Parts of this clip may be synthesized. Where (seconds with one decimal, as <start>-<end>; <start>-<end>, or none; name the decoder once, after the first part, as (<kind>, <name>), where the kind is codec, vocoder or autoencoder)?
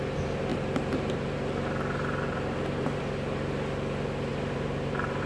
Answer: 0.5-3.0 (vocoder, BigVGAN v2); 4.3-5.3